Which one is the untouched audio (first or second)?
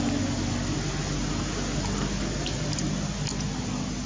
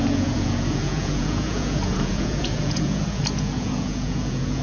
first